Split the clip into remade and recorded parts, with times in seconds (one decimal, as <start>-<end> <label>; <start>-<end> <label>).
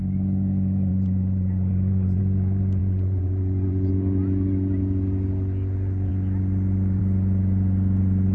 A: 0.0-0.9 recorded; 0.9-2.2 remade; 2.2-2.8 recorded; 2.8-3.9 remade; 3.9-8.3 recorded